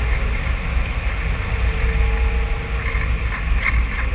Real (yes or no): yes